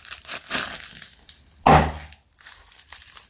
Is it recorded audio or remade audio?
recorded